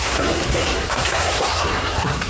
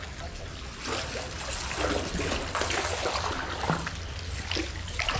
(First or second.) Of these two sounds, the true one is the second